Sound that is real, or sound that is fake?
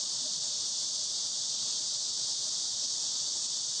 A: fake